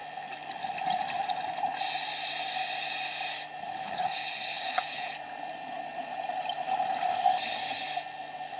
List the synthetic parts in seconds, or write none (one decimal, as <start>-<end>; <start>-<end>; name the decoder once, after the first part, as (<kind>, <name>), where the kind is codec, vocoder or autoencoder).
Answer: 3.8-5.1 (codec, HILCodec)